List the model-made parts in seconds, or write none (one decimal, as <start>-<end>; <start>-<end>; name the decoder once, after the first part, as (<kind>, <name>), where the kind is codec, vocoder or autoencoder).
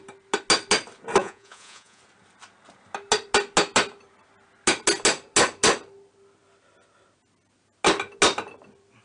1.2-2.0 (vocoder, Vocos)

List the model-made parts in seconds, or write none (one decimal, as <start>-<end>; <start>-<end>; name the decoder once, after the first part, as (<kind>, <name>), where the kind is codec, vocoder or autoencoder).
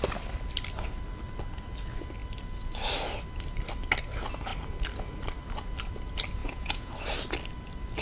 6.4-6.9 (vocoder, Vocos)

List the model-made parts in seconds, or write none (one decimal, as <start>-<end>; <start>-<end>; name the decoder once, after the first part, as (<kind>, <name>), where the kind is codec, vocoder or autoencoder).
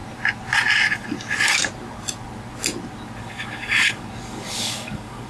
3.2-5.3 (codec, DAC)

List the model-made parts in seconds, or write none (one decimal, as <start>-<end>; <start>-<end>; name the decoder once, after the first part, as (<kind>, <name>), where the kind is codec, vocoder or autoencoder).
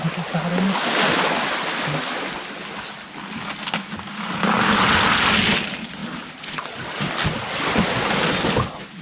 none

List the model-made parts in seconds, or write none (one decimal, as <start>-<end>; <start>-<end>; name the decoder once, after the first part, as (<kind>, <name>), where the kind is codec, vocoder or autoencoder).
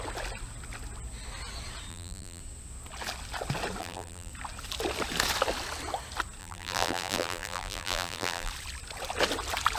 1.9-2.4 (vocoder, BigVGAN v2); 3.8-4.3; 6.4-8.5